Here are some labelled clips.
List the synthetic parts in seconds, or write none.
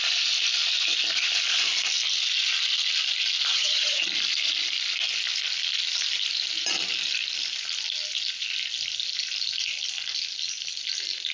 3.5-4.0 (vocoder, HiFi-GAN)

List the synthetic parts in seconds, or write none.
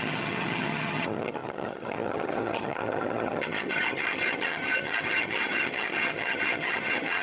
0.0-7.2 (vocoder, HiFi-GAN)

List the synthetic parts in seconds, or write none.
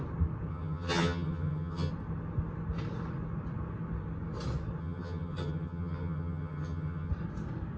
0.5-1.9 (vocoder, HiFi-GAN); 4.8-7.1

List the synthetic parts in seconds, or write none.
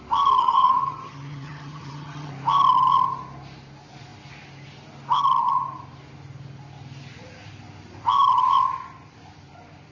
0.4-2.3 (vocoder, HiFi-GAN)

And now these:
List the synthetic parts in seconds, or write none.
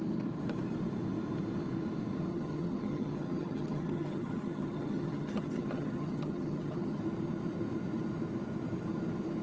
2.3-7.0 (vocoder, HiFi-GAN)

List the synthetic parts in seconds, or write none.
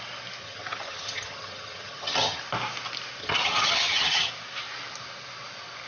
0.4-2.4 (vocoder, HiFi-GAN); 3.2-4.3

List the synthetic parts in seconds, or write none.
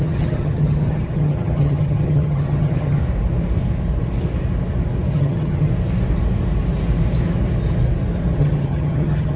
0.0-3.0 (vocoder, HiFi-GAN); 5.1-5.7; 8.4-9.4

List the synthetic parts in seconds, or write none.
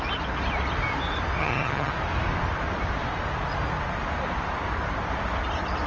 1.4-1.9 (vocoder, HiFi-GAN)